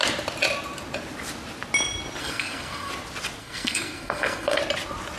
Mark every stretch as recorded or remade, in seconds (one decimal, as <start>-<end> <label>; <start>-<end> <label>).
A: 0.0-2.2 recorded; 2.2-2.9 remade; 2.9-3.4 recorded; 3.4-4.6 remade; 4.6-5.2 recorded